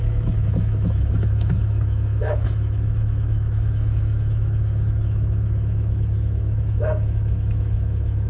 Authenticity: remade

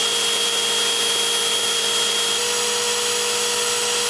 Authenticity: recorded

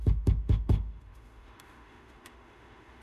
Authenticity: remade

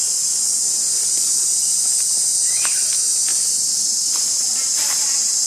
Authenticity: recorded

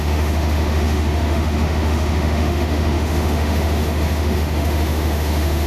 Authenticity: remade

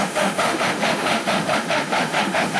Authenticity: remade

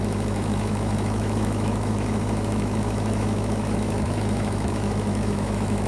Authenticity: remade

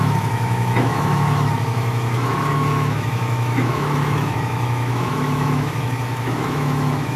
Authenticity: remade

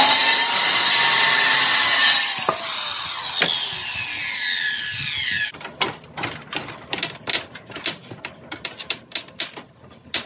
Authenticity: recorded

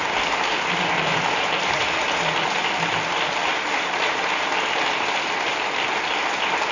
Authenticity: recorded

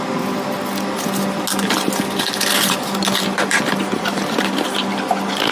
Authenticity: recorded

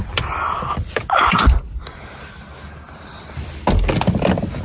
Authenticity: recorded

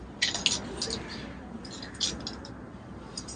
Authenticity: recorded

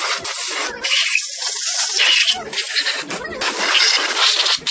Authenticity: recorded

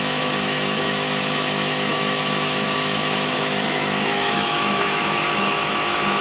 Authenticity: remade